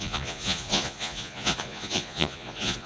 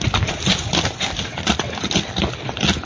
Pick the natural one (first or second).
second